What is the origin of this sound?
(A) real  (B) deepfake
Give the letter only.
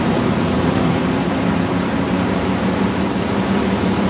B